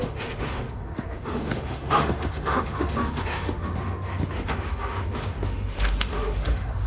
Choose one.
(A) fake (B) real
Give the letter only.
A